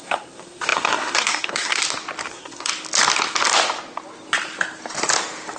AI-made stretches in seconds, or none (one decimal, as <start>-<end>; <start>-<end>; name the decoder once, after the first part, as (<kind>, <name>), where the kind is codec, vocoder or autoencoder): 0.0-1.8 (codec, SNAC); 2.3-2.7